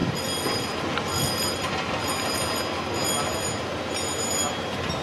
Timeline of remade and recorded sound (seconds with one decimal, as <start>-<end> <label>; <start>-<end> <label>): 0.0-5.0 recorded